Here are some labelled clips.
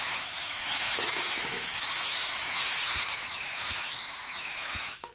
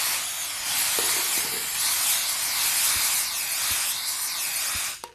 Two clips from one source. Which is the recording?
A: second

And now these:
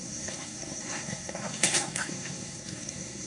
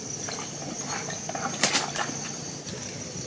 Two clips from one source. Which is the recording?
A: second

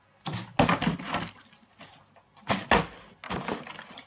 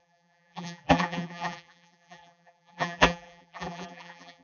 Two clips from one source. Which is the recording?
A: first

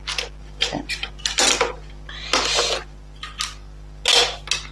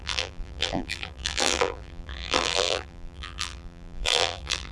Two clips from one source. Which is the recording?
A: first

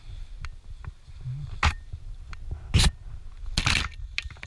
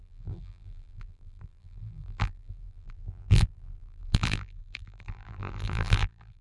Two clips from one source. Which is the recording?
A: first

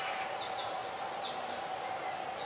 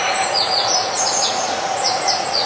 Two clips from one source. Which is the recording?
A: first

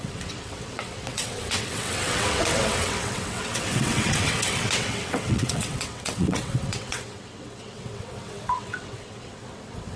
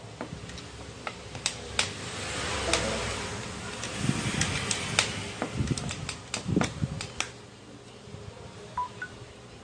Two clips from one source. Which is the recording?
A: second